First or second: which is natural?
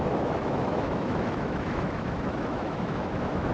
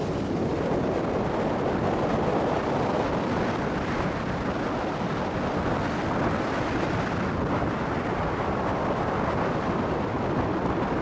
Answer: second